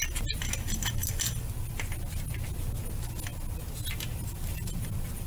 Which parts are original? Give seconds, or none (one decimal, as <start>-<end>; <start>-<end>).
0.0-5.3